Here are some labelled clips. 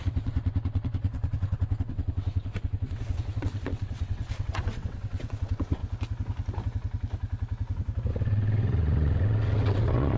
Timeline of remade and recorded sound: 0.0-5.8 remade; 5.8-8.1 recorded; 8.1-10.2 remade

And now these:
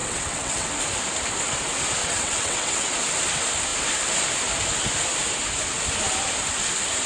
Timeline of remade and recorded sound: 0.0-0.7 remade; 0.7-2.0 recorded; 2.0-2.9 remade; 2.9-7.1 recorded